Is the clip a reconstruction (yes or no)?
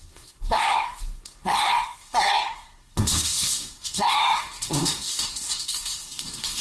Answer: yes